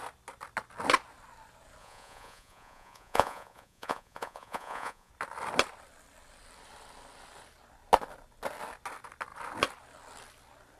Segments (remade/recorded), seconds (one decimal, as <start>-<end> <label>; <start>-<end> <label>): 0.0-1.8 recorded; 1.8-5.1 remade; 5.1-10.8 recorded